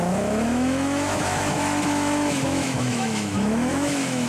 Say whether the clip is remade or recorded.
remade